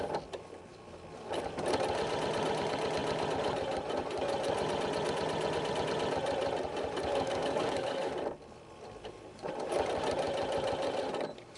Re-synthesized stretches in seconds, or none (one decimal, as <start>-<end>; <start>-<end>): 7.1-8.1